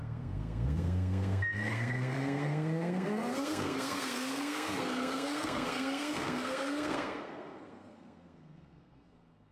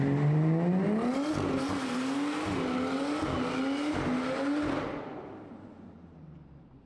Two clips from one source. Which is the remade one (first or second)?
first